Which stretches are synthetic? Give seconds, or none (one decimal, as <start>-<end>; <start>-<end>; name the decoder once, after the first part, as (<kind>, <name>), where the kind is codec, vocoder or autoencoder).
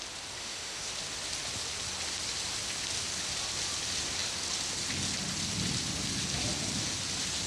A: 0.4-0.9 (autoencoder, DAC-VAE)